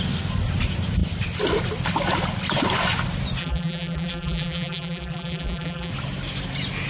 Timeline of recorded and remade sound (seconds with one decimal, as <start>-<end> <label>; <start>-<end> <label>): 0.0-3.4 recorded; 3.4-5.9 remade; 5.9-6.9 recorded

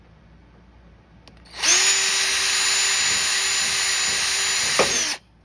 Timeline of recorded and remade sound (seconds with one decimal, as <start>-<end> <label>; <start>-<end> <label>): 0.0-5.4 recorded

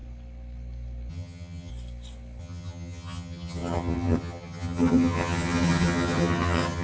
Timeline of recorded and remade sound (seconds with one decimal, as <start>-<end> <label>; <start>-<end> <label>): 0.0-1.1 recorded; 1.1-1.7 remade; 1.7-2.4 recorded; 2.4-6.8 remade

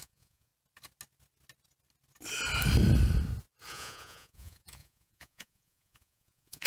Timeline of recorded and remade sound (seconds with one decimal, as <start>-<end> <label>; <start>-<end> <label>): 0.0-0.5 remade; 0.5-3.7 recorded; 3.7-6.7 remade

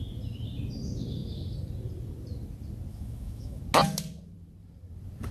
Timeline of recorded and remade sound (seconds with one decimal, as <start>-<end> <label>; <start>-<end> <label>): 0.0-2.9 recorded; 2.9-3.6 remade; 3.6-5.3 recorded

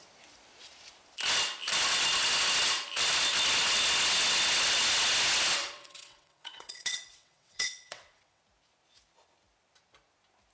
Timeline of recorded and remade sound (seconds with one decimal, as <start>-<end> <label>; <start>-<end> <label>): 0.0-5.6 recorded; 5.6-8.4 remade; 8.4-10.5 recorded